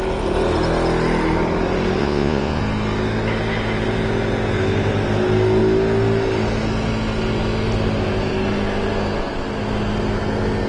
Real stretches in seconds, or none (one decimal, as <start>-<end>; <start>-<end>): 0.0-2.0; 2.6-10.7